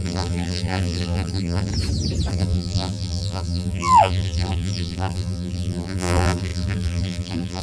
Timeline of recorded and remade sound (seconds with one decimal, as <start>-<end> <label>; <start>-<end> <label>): 0.0-1.7 remade; 1.7-2.3 recorded; 2.3-7.6 remade